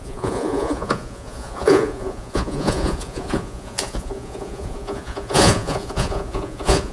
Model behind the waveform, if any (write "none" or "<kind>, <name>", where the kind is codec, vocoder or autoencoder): vocoder, Vocos